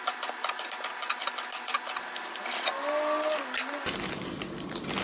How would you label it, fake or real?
real